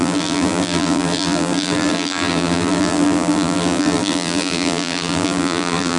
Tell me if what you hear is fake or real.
fake